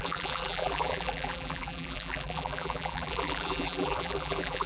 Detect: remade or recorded remade